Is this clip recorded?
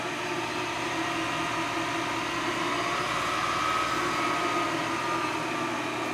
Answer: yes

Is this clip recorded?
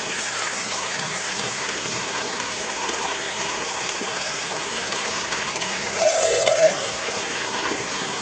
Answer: no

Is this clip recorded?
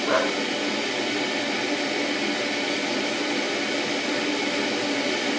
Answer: yes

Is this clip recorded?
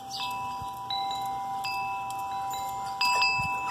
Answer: yes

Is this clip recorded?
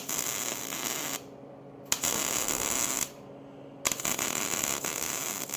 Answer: yes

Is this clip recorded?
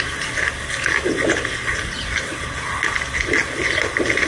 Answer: yes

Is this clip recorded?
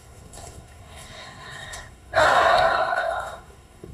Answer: no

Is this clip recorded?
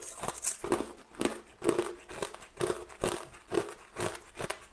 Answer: yes